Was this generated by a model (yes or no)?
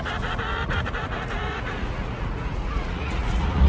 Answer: yes